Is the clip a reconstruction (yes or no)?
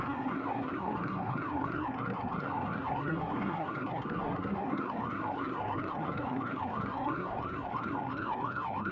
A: yes